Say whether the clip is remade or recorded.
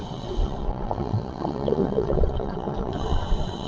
remade